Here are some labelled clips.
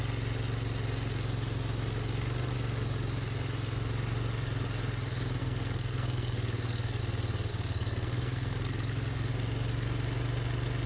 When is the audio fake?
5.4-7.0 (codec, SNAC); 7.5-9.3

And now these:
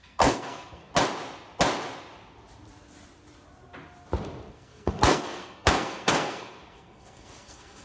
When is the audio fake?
0.0-0.9 (codec, SNAC); 4.5-7.8

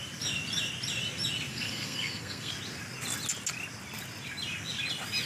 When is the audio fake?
1.5-2.5 (codec, SNAC)

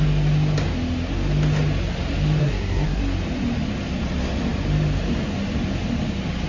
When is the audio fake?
2.4-3.0 (codec, SNAC)

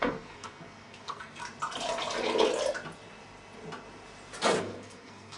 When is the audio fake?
0.0-1.4 (codec, SNAC); 4.6-5.4